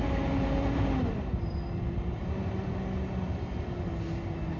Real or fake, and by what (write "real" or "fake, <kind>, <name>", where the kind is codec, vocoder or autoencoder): real